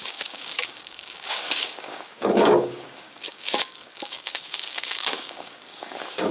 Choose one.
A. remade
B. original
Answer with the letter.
A